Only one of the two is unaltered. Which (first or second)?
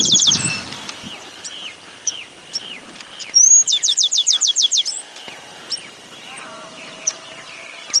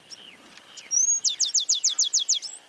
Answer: second